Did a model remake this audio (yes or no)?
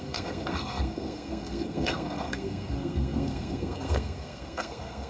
yes